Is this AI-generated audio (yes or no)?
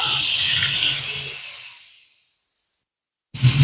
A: no